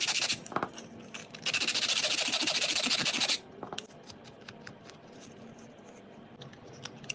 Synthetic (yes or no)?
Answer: no